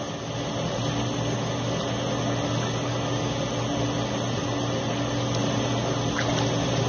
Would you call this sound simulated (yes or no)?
no